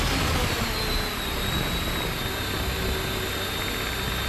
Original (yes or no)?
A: yes